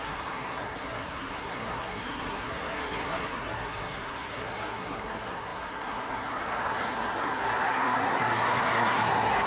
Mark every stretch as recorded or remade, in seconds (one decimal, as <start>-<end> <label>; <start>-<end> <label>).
0.0-9.5 remade